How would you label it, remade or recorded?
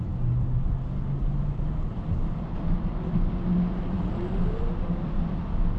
recorded